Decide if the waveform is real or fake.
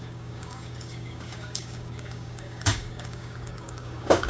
fake